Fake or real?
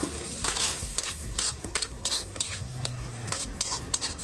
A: fake